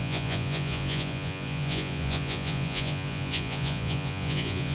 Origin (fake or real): fake